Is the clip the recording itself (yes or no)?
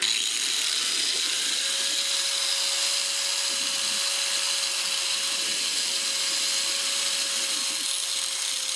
yes